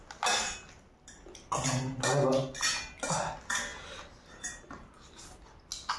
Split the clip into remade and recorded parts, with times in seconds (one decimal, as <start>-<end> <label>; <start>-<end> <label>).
0.0-6.0 recorded